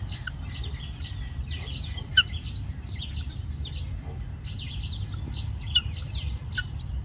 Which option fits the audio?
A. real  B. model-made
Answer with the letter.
A